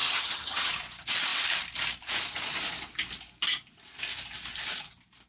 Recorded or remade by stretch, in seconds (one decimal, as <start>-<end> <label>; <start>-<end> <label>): 0.0-0.7 remade; 0.7-5.3 recorded